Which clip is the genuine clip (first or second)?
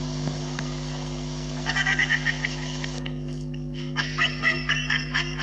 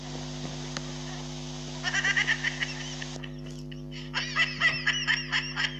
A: second